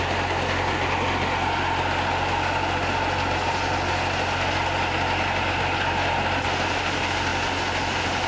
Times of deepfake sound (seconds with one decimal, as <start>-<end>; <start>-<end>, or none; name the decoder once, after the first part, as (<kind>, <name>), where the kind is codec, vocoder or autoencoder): none